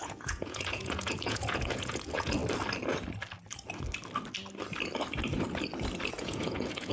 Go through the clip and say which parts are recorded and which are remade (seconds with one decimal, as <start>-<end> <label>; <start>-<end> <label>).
0.0-2.4 remade; 2.4-6.1 recorded; 6.1-6.9 remade